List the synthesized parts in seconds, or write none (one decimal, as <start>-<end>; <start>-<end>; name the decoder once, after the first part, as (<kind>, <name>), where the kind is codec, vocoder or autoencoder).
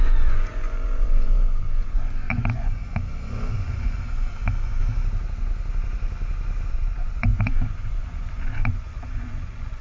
0.0-4.8 (vocoder, Vocos); 6.7-9.8